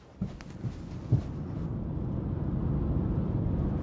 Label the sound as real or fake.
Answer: real